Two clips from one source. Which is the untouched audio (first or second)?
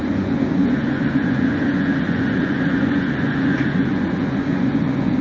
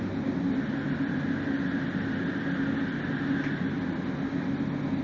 second